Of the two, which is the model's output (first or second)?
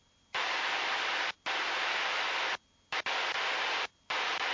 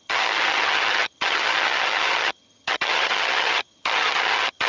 second